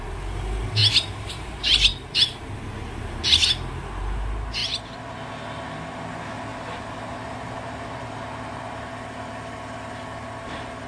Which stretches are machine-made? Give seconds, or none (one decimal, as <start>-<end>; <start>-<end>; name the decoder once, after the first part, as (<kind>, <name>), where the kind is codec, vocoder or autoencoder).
0.8-2.4 (vocoder, BigVGAN v2); 4.6-5.3; 6.5-10.9